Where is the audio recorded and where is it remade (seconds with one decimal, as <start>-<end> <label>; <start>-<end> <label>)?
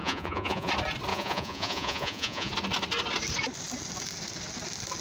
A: 0.0-0.7 remade; 0.7-1.1 recorded; 1.1-2.5 remade; 2.5-5.0 recorded